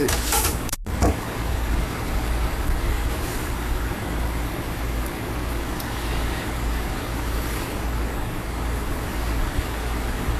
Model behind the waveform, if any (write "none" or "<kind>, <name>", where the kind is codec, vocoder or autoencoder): codec, DAC